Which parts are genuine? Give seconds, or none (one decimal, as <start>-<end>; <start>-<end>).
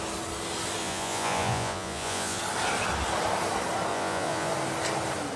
0.0-0.8; 2.4-3.9; 4.5-5.4